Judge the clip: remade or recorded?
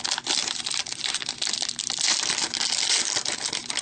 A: recorded